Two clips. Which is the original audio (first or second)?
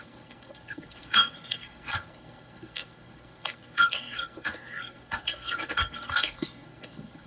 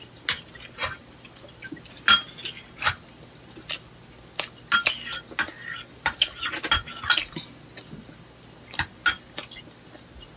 second